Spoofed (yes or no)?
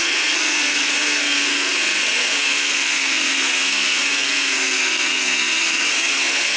yes